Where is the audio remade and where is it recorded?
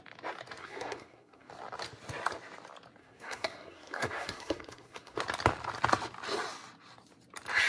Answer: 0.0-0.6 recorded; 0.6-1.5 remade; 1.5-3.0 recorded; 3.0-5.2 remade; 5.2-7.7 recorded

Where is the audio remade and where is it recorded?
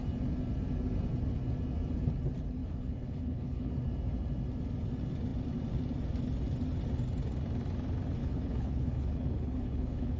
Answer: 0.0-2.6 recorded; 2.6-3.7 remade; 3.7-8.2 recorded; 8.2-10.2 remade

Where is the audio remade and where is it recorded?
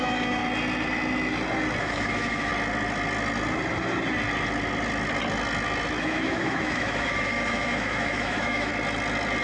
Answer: 0.0-0.4 remade; 0.4-1.8 recorded; 1.8-2.5 remade; 2.5-6.0 recorded; 6.0-8.7 remade; 8.7-9.4 recorded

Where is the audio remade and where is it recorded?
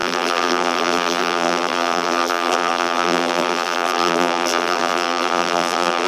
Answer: 0.0-6.1 remade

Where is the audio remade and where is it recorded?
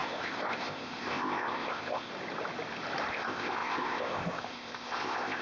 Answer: 0.0-2.1 remade; 2.1-3.1 recorded; 3.1-5.4 remade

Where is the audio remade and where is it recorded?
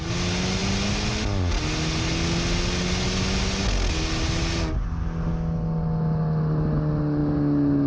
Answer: 0.0-7.9 recorded